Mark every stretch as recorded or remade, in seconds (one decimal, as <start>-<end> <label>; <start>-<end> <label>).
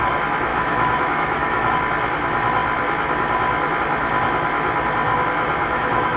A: 0.0-0.5 recorded; 0.5-1.7 remade; 1.7-5.6 recorded; 5.6-6.2 remade